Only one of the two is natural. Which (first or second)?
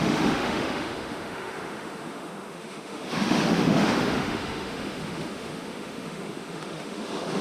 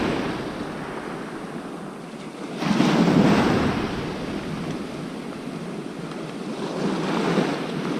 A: second